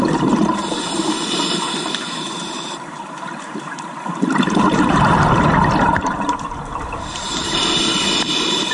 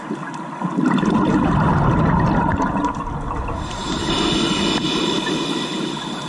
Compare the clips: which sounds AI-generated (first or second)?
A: first